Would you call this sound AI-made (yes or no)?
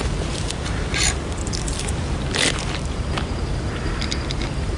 yes